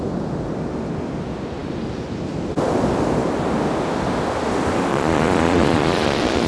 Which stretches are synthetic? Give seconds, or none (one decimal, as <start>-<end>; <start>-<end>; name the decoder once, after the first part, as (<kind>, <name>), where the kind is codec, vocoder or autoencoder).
4.9-6.5 (vocoder, Vocos)